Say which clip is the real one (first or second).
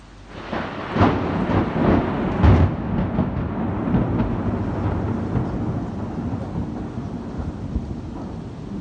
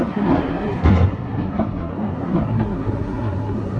first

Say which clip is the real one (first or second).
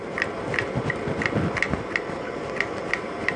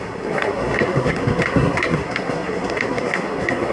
first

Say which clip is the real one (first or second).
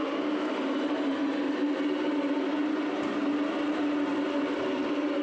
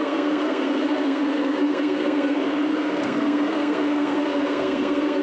first